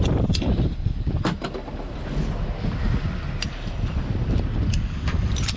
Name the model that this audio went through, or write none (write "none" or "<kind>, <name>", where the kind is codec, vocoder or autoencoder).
none